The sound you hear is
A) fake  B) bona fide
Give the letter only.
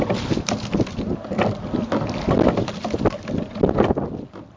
B